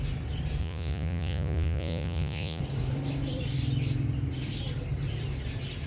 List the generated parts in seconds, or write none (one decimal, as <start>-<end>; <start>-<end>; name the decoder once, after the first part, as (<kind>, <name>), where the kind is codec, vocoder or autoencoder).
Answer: 0.6-2.6 (vocoder, Vocos)